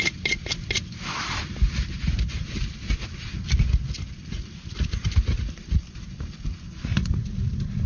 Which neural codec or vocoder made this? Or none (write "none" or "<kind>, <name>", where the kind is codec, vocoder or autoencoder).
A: none